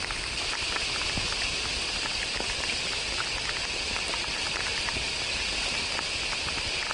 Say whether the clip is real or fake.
real